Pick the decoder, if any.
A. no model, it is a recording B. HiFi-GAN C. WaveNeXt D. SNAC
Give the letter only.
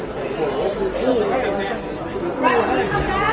A